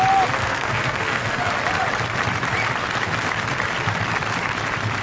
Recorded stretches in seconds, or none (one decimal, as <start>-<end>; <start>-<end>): 0.0-0.4; 1.4-5.0